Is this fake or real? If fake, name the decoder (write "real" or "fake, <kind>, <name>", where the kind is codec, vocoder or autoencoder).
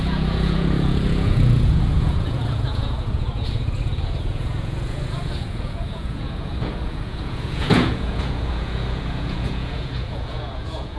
fake, vocoder, Vocos